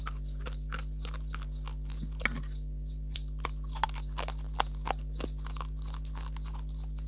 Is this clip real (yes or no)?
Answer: yes